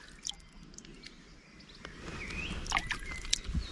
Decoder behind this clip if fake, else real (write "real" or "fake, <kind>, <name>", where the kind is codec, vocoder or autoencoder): real